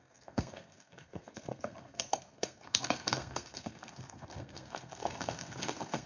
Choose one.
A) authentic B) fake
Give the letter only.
B